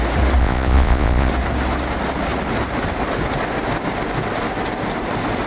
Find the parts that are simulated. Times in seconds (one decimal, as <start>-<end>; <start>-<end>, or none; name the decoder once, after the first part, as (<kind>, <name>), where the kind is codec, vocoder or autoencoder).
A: 0.4-1.3 (vocoder, Vocos)